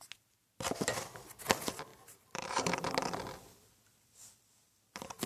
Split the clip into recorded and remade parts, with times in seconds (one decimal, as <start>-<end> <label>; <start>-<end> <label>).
0.0-1.9 recorded; 1.9-2.9 remade; 2.9-5.3 recorded